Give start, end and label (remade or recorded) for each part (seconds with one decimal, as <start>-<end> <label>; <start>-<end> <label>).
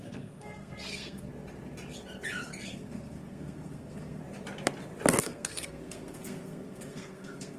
0.0-1.3 remade; 1.3-2.6 recorded; 2.6-4.2 remade; 4.2-5.2 recorded; 5.2-7.6 remade